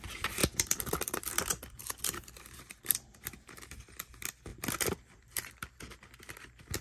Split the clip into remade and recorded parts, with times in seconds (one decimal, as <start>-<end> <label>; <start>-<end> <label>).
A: 0.0-0.4 recorded; 0.4-1.3 remade; 1.3-1.8 recorded; 1.8-3.3 remade; 3.3-4.5 recorded; 4.5-5.8 remade; 5.8-6.8 recorded